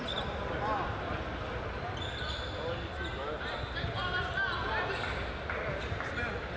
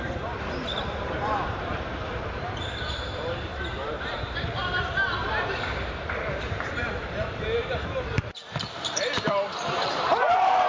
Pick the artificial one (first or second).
second